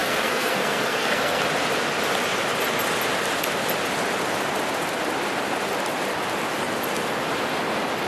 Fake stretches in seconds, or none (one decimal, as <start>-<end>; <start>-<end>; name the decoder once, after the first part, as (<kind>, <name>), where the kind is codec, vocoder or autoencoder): 0.0-1.4 (codec, SNAC)